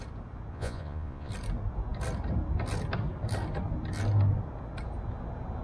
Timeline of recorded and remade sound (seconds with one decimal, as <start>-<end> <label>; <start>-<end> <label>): 0.0-0.5 recorded; 0.5-1.3 remade; 1.3-5.6 recorded

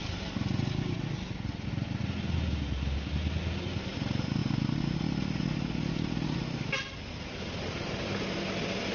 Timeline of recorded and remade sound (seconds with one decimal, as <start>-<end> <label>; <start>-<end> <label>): 0.0-8.9 recorded

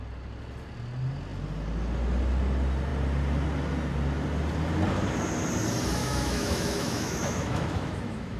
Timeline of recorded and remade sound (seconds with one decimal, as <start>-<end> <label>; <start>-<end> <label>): 0.0-6.0 recorded; 6.0-8.4 remade

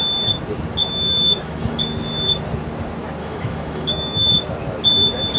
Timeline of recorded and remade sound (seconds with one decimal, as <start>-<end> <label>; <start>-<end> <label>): 0.0-0.8 recorded; 0.8-1.8 remade; 1.8-3.2 recorded; 3.2-4.3 remade; 4.3-5.4 recorded

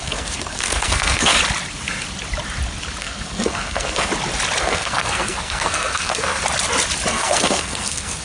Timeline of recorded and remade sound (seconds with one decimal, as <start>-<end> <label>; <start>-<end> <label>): 0.0-1.4 remade; 1.4-3.0 recorded; 3.0-4.1 remade; 4.1-4.6 recorded; 4.6-6.4 remade; 6.4-7.1 recorded; 7.1-8.2 remade

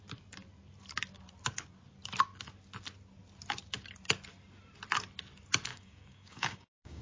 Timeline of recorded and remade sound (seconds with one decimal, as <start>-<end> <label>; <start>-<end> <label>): 0.0-5.7 recorded; 5.7-7.0 remade

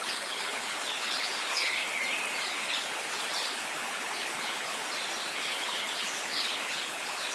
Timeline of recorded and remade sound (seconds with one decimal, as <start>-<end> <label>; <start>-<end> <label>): 0.0-1.8 remade; 1.8-2.5 recorded; 2.5-4.8 remade; 4.8-5.3 recorded; 5.3-7.3 remade

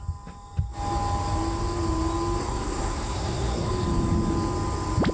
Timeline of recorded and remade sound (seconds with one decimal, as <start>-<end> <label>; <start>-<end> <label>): 0.0-2.4 recorded; 2.4-3.7 remade; 3.7-5.1 recorded